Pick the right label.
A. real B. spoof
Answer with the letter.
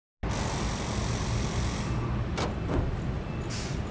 A